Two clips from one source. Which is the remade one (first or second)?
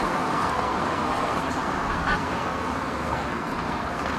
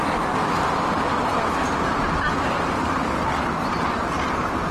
first